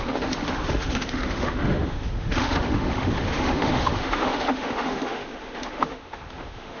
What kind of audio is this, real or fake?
fake